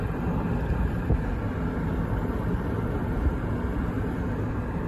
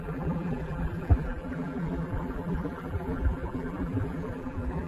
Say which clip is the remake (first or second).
second